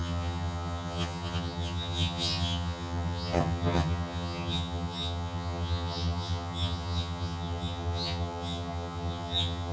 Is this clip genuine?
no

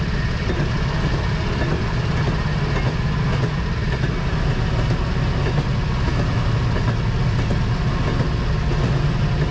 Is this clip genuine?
yes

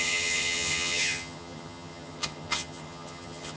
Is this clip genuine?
no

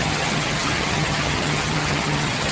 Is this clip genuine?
no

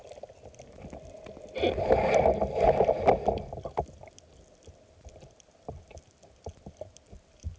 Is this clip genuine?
yes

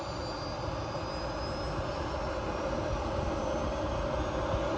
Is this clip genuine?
yes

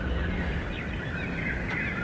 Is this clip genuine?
yes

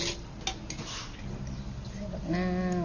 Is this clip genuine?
yes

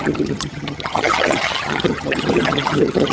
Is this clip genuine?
no